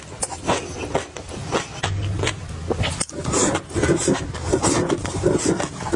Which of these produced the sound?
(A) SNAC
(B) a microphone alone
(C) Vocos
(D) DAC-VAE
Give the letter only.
B